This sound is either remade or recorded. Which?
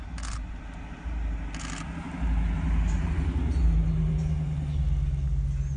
recorded